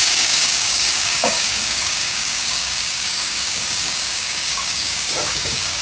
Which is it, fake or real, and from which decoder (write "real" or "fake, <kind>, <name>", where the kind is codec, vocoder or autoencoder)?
fake, codec, DAC